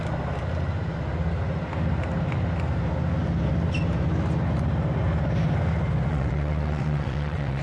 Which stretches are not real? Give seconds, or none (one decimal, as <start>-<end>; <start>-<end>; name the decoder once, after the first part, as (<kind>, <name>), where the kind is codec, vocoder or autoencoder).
6.1-7.6 (vocoder, WaveNeXt)